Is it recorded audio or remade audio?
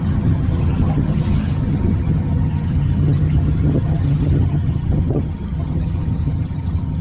remade